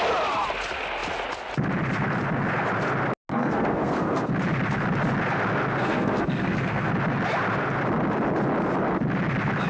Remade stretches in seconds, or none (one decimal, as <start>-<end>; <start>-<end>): 3.3-4.3; 5.8-6.9